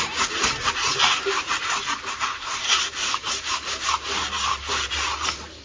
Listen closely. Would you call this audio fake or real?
fake